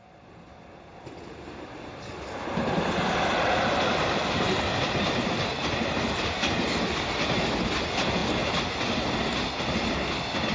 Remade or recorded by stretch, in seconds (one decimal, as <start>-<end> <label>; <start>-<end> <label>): 0.0-10.5 recorded